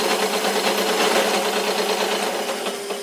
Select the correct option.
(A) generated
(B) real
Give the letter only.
B